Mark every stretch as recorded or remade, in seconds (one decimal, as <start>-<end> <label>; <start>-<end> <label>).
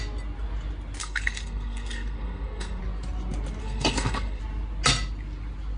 0.0-1.0 recorded; 1.0-2.8 remade; 2.8-3.6 recorded; 3.6-4.4 remade; 4.4-5.8 recorded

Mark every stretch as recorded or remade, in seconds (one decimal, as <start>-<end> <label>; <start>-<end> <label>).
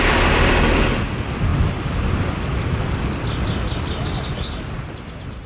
0.0-5.5 recorded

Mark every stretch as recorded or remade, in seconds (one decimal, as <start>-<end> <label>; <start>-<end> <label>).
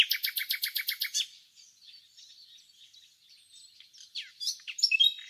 0.0-0.4 recorded; 0.4-1.2 remade; 1.2-2.0 recorded; 2.0-5.3 remade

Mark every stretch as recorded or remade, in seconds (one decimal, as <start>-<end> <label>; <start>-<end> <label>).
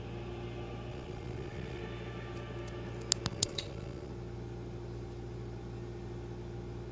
0.0-0.9 recorded; 0.9-1.8 remade; 1.8-3.3 recorded; 3.3-4.1 remade; 4.1-6.9 recorded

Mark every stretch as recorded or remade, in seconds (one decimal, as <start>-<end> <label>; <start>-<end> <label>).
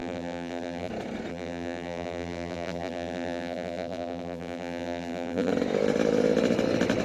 0.0-0.9 remade; 0.9-1.3 recorded; 1.3-5.5 remade; 5.5-7.0 recorded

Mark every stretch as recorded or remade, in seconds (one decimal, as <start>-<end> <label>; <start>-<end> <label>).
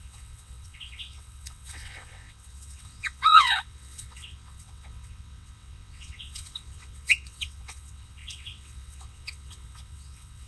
0.0-10.5 remade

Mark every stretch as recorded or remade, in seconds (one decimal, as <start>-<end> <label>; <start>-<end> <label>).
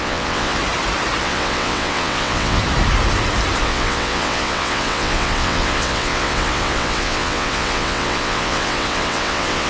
0.0-0.6 remade; 0.6-1.2 recorded; 1.2-2.6 remade; 2.6-3.6 recorded; 3.6-9.7 remade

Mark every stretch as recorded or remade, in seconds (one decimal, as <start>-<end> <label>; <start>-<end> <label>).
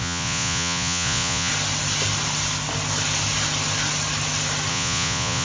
0.0-1.5 remade; 1.5-4.7 recorded; 4.7-5.4 remade